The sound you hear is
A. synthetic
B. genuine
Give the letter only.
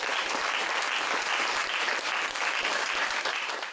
B